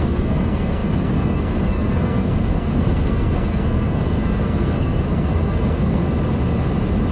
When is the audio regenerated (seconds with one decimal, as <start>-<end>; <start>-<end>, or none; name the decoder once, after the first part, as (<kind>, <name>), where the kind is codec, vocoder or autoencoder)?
0.0-6.0 (codec, SNAC)